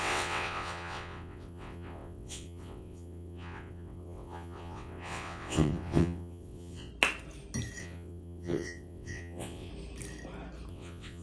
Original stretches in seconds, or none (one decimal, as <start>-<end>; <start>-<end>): 6.9-7.8; 9.7-10.7